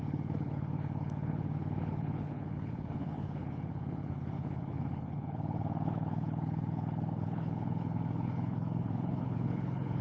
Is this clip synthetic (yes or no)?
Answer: yes